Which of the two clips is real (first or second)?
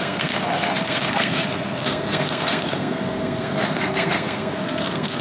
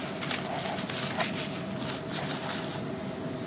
second